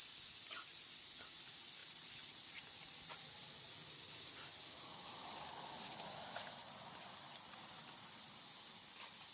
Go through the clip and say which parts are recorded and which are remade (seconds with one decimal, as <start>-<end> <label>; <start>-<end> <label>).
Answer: 0.0-9.3 recorded